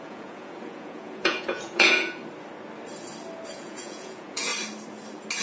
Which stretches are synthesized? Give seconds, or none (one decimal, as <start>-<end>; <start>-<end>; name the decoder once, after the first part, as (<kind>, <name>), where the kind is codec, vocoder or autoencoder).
0.0-2.2 (vocoder, Vocos); 3.5-4.5